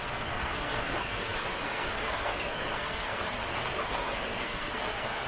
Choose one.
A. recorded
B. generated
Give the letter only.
B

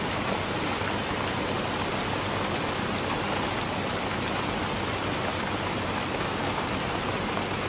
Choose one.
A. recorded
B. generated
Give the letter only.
A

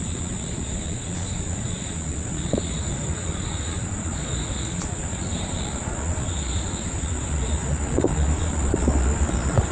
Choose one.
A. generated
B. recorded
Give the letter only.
A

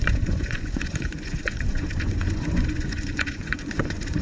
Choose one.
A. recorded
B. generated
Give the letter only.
B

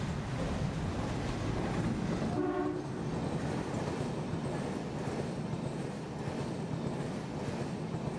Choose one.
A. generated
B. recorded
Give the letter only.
B